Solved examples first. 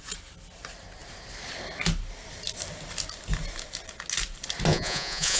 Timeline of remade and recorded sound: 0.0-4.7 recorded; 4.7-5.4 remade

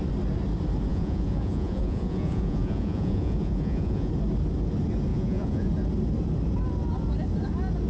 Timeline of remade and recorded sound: 0.0-0.9 recorded; 0.9-4.1 remade; 4.1-5.1 recorded; 5.1-5.7 remade; 5.7-7.9 recorded

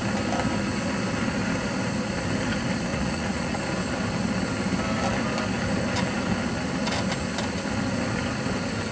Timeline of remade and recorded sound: 0.0-2.9 recorded; 2.9-3.6 remade; 3.6-8.9 recorded